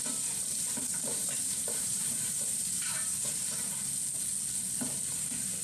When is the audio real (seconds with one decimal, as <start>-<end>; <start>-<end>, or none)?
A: 0.0-0.9; 3.7-5.6